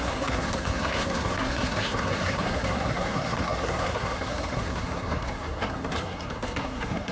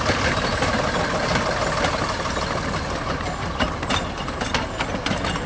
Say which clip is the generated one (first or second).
first